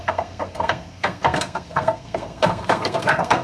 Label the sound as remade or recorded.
remade